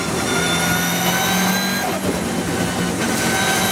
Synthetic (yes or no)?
no